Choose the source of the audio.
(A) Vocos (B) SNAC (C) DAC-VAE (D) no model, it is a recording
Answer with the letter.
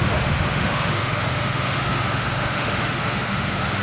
C